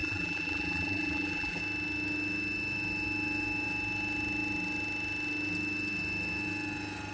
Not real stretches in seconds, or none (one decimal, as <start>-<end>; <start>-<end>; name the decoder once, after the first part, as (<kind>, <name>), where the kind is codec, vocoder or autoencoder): 0.0-1.6 (vocoder, BigVGAN v2)